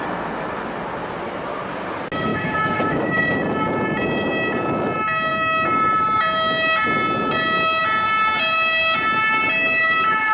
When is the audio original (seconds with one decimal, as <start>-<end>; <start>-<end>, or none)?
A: 0.0-2.3; 3.2-10.3